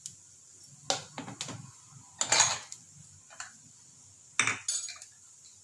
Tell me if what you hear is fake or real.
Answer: real